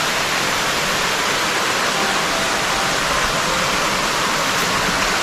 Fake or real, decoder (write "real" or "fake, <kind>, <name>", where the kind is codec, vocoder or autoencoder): real